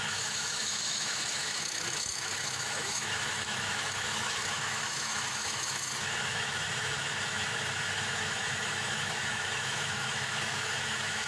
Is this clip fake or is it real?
fake